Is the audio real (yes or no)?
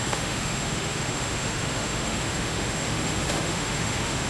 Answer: no